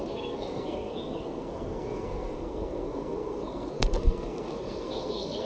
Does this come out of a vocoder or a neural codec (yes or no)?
yes